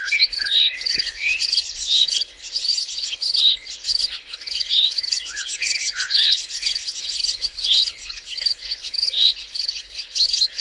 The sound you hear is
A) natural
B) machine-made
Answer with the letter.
B